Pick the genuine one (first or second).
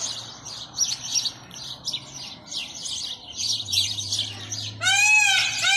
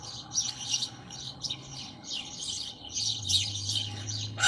first